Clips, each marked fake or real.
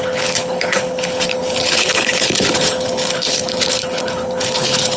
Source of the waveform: fake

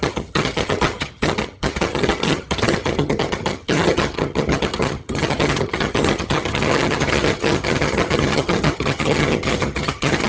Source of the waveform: fake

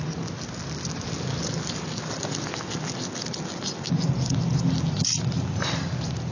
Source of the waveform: real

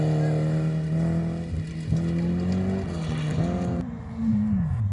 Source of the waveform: real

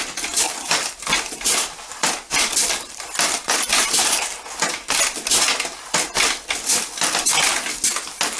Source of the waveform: real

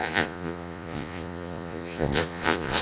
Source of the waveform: fake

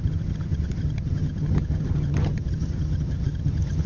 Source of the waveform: fake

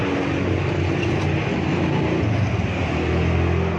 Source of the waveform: real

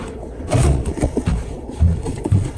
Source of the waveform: fake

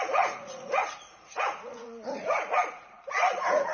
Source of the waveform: fake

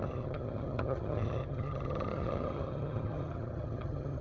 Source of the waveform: fake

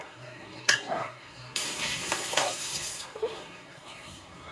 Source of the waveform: fake